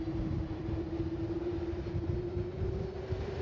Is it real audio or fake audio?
fake